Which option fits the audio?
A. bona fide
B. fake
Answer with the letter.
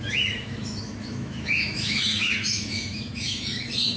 B